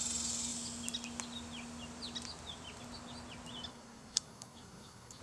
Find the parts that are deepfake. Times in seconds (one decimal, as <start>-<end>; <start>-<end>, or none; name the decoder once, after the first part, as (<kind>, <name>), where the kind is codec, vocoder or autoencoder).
3.7-5.2 (codec, SNAC)